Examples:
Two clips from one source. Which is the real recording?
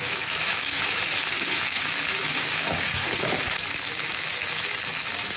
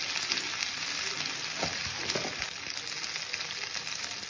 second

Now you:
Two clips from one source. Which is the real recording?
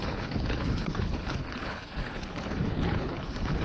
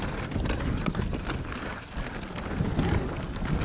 second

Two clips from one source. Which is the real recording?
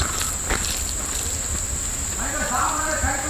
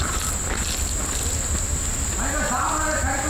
second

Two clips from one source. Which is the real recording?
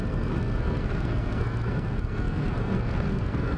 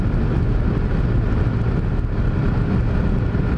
second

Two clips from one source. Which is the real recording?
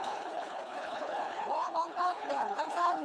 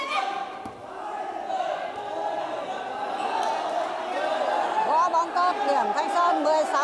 second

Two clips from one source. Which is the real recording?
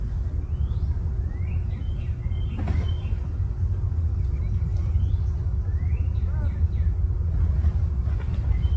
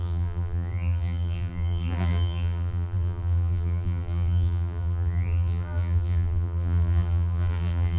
first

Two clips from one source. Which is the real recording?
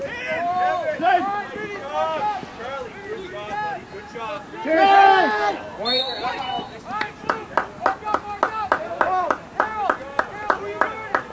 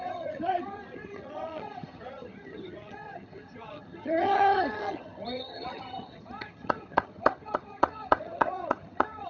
first